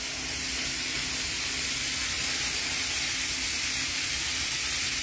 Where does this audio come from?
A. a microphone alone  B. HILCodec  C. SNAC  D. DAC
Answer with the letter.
A